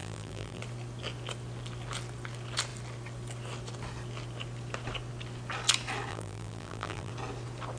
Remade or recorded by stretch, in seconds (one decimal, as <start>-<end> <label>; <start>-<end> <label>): 0.0-0.6 remade; 0.6-6.1 recorded; 6.1-7.1 remade; 7.1-7.8 recorded